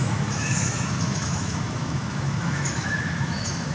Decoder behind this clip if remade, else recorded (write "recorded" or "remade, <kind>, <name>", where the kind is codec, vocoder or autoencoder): remade, autoencoder, DAC-VAE